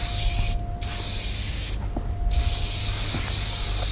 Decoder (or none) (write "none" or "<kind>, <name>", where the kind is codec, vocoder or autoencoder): none